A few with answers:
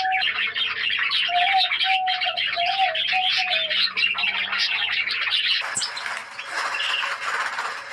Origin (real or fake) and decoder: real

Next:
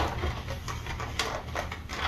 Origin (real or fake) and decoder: real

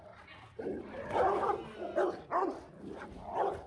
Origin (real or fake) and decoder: real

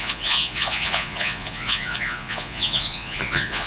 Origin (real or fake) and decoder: fake, vocoder, Vocos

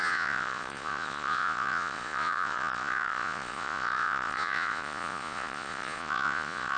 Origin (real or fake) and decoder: fake, vocoder, Vocos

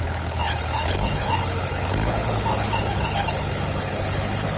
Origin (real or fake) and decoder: fake, codec, HILCodec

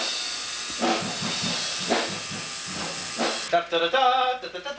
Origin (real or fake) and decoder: real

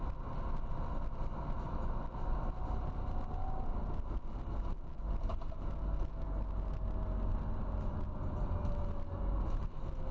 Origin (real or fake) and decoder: real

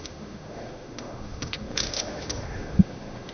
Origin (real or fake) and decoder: fake, autoencoder, DAC-VAE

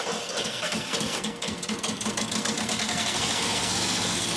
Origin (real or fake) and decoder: fake, codec, SNAC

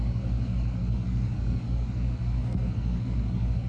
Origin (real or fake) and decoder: fake, codec, SNAC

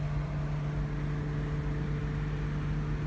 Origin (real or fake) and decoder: real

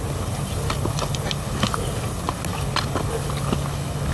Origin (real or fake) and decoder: real